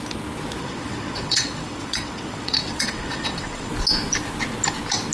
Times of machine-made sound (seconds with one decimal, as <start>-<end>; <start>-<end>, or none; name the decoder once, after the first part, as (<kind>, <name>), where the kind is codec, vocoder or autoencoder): 0.6-3.7 (vocoder, WaveNeXt)